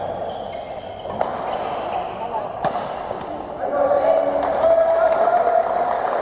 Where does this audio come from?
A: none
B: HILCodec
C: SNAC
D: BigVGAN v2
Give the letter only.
A